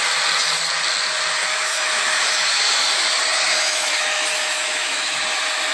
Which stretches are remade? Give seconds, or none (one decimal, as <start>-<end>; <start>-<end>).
1.4-2.6; 3.5-5.2